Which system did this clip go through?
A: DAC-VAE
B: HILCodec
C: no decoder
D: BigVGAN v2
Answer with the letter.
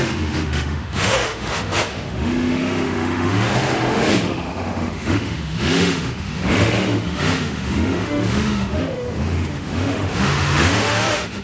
A